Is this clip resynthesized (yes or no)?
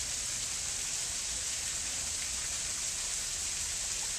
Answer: no